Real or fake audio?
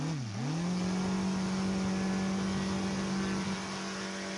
real